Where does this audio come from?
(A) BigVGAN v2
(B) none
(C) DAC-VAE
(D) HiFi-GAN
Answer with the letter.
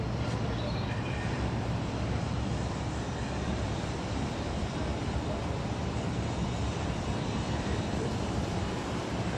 A